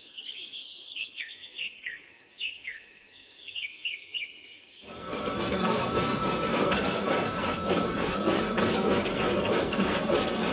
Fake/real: fake